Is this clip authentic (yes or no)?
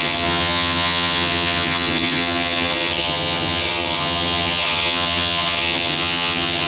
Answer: no